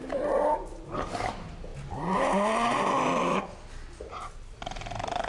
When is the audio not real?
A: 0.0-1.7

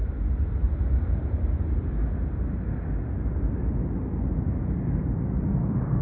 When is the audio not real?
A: none

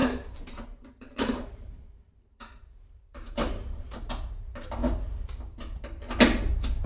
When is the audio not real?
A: 0.0-4.1

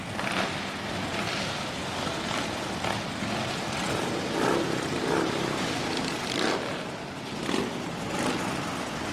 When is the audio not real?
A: 3.8-7.4